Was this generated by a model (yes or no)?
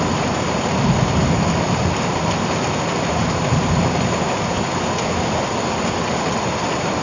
no